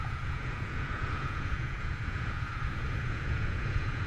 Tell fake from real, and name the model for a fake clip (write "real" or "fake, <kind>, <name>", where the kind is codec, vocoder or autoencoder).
fake, vocoder, Vocos